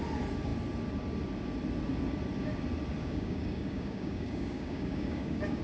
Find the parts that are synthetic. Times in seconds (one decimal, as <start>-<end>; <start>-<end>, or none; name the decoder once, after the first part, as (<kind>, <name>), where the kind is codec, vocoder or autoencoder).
3.0-5.6 (codec, DAC)

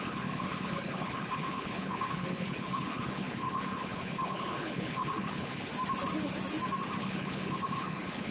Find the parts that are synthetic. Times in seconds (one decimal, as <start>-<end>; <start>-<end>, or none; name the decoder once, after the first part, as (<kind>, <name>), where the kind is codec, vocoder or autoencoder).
0.0-5.7 (codec, HILCodec); 7.0-8.3

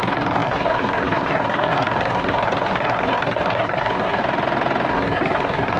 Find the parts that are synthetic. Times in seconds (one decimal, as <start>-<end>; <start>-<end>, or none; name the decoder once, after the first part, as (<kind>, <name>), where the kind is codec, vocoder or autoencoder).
0.0-4.2 (codec, SNAC); 4.9-5.8

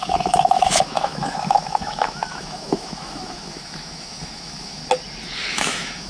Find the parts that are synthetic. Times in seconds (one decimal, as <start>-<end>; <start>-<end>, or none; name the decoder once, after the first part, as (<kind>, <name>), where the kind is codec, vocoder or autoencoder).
0.0-4.8 (autoencoder, DAC-VAE); 5.5-6.1